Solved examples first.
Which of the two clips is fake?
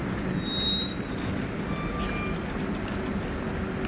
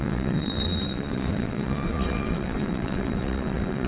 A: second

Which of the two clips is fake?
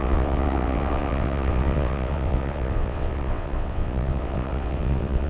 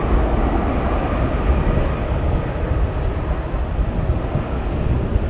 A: first